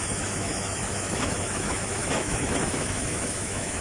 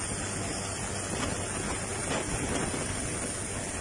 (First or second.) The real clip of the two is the second